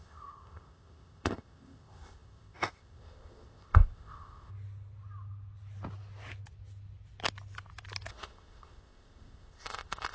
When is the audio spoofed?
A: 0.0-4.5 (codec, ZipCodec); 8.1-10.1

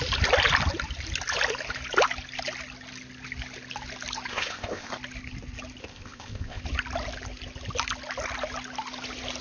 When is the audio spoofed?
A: 4.3-4.9 (codec, ZipCodec); 5.8-6.6

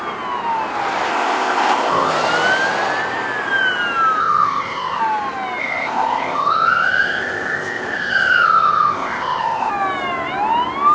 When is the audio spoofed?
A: 1.1-2.1 (codec, ZipCodec); 4.2-5.0; 5.6-9.7

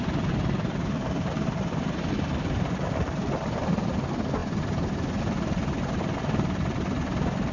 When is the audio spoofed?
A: none

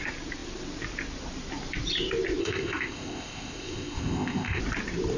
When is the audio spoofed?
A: 2.4-4.6 (codec, ZipCodec)

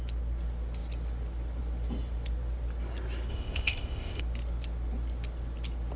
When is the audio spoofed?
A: 3.3-4.2 (codec, ZipCodec)

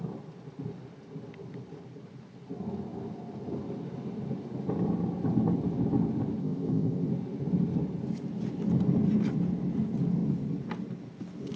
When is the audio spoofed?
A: 6.4-7.1 (codec, ZipCodec)

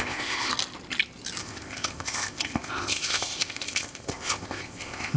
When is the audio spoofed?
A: 0.0-0.5 (codec, ZipCodec); 1.4-5.2